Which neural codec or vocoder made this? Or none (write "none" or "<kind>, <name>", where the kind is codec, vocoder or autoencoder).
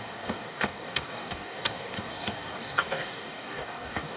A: codec, DAC